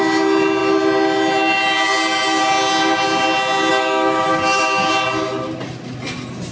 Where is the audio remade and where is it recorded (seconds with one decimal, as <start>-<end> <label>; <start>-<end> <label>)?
0.0-3.7 recorded; 3.7-4.9 remade; 4.9-6.5 recorded